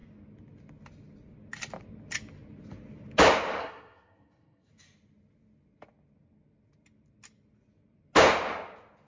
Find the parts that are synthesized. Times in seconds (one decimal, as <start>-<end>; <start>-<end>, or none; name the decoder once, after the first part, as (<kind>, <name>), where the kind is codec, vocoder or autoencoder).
3.6-4.7 (codec, SNAC)